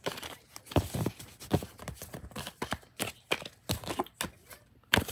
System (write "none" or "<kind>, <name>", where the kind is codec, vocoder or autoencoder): none